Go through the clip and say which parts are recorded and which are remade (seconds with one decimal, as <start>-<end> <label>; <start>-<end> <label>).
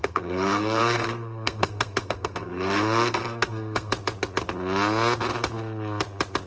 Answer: 0.0-3.9 remade; 3.9-6.5 recorded